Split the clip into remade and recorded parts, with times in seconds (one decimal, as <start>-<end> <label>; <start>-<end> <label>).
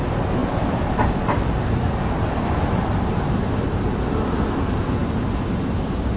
0.0-6.2 recorded